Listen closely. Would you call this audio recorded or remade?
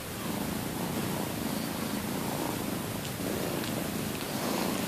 recorded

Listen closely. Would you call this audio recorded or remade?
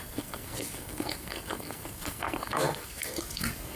remade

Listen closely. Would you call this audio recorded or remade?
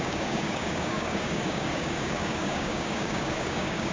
remade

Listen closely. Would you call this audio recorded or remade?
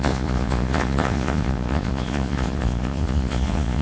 remade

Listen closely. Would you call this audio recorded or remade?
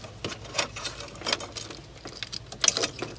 recorded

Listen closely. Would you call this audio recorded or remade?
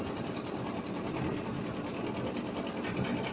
recorded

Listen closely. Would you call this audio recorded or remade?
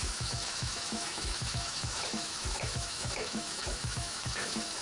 remade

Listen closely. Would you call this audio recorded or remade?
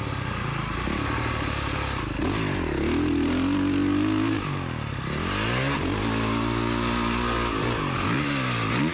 recorded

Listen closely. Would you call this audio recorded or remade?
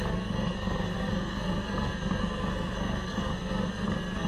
remade